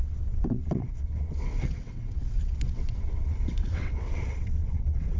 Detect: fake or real fake